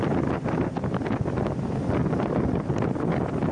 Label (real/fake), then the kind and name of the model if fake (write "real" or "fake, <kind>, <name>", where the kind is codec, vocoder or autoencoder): real